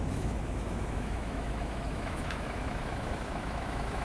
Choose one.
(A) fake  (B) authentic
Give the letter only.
A